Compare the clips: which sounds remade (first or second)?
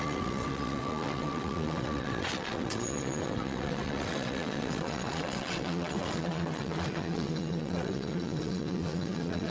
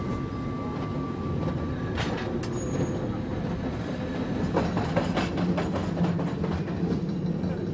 first